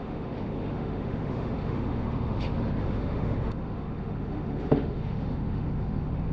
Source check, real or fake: fake